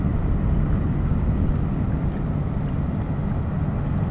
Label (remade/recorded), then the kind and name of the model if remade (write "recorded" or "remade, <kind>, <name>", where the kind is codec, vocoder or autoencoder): recorded